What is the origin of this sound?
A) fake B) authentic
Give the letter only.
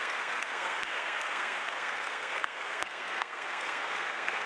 A